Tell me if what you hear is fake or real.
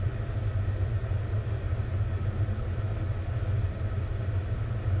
real